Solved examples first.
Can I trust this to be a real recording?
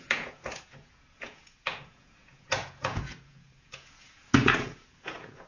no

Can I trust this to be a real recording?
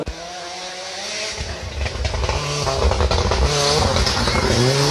yes